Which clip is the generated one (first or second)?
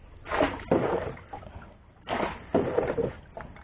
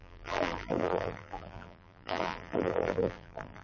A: second